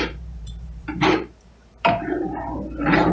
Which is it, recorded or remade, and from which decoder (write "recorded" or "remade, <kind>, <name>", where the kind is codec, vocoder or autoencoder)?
remade, vocoder, BigVGAN v2